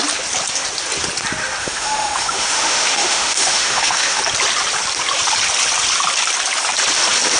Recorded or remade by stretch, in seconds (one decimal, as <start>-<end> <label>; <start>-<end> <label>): 0.0-1.6 recorded; 1.6-4.2 remade; 4.2-7.4 recorded